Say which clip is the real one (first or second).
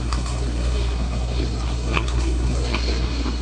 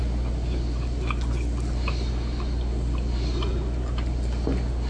second